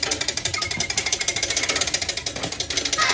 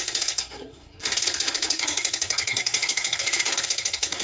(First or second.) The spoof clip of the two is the second